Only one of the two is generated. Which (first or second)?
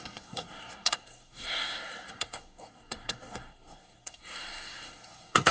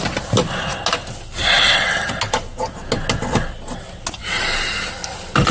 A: first